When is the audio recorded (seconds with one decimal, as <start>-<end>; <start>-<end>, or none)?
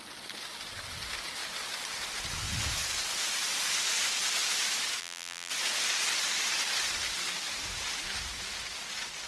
0.0-5.0; 5.5-9.3